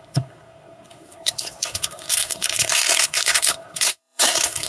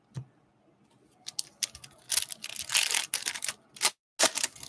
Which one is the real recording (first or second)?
second